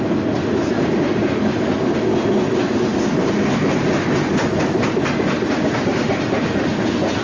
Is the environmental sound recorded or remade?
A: recorded